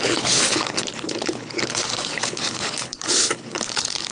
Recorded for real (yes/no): no